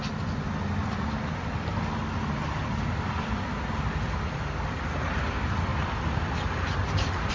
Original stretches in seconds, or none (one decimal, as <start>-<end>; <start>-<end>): 0.0-7.3